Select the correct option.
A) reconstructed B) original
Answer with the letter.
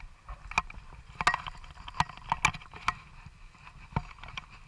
B